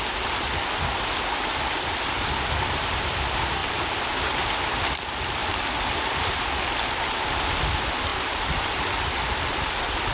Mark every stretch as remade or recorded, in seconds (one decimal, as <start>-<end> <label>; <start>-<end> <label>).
0.0-3.6 recorded; 3.6-4.5 remade; 4.5-5.4 recorded; 5.4-6.4 remade; 6.4-8.1 recorded; 8.1-9.7 remade; 9.7-10.1 recorded